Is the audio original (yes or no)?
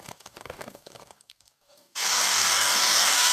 no